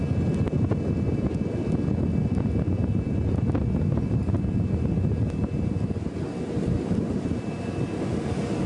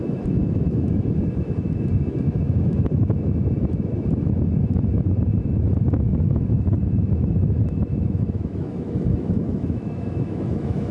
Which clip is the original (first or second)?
first